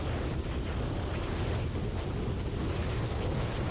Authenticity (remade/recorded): recorded